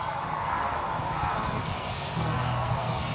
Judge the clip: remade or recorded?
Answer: remade